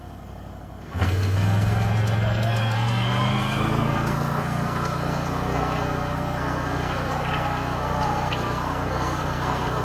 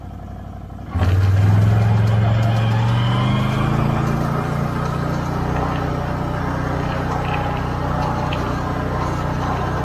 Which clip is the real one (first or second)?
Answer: second